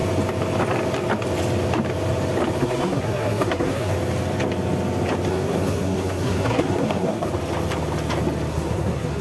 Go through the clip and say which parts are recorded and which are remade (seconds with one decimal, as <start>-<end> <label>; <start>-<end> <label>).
0.0-2.6 recorded; 2.6-3.9 remade; 3.9-5.3 recorded; 5.3-7.3 remade; 7.3-8.5 recorded; 8.5-9.2 remade